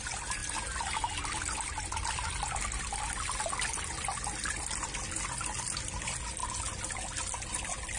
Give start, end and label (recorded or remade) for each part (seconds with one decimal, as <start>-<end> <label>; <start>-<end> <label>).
0.0-8.0 recorded